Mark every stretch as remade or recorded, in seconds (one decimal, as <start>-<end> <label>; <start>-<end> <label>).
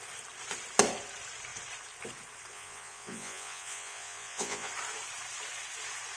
0.0-2.5 recorded; 2.5-4.7 remade; 4.7-6.2 recorded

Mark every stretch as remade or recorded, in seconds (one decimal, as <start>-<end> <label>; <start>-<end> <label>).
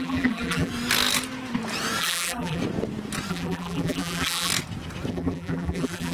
0.0-0.7 remade; 0.7-2.0 recorded; 2.0-2.6 remade; 2.6-3.3 recorded; 3.3-4.5 remade; 4.5-5.1 recorded; 5.1-6.1 remade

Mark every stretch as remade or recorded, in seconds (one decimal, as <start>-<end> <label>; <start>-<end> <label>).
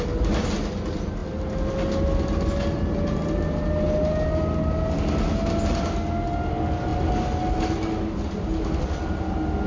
0.0-9.7 recorded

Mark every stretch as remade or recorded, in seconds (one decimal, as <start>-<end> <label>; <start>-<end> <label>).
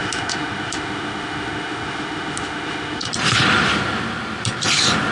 0.0-3.1 remade; 3.1-5.1 recorded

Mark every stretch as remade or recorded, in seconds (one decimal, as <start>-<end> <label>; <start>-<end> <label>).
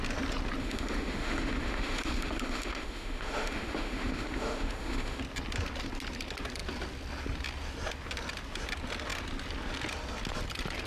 0.0-0.6 recorded; 0.6-5.2 remade; 5.2-10.9 recorded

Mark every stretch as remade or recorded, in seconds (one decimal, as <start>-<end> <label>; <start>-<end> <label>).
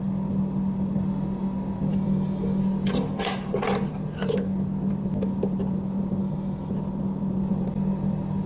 0.0-1.9 recorded; 1.9-2.6 remade; 2.6-6.2 recorded; 6.2-6.7 remade; 6.7-8.5 recorded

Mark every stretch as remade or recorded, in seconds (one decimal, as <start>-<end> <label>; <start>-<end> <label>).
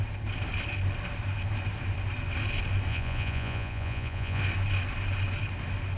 0.0-2.9 recorded; 2.9-4.4 remade; 4.4-6.0 recorded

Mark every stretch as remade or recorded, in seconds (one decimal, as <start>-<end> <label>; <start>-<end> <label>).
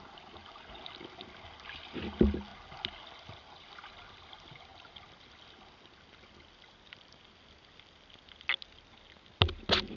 0.0-4.7 recorded; 4.7-5.3 remade; 5.3-10.0 recorded